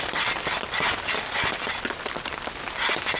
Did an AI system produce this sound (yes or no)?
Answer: no